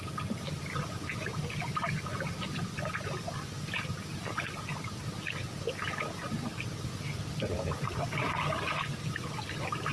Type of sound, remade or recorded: recorded